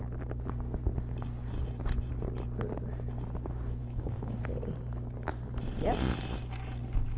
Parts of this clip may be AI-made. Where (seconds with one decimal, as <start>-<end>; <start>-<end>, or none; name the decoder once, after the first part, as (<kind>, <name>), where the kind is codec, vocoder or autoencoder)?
3.8-4.4 (autoencoder, DAC-VAE)